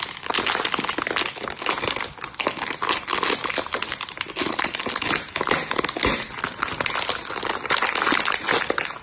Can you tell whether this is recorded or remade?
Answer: recorded